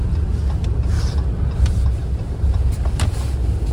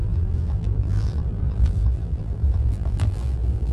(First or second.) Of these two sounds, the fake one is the second